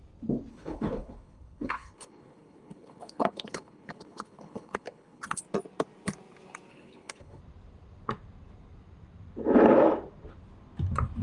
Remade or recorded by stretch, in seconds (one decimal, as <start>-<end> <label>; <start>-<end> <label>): 0.0-0.5 recorded; 0.5-5.4 remade; 5.4-6.7 recorded; 6.7-7.4 remade; 7.4-11.2 recorded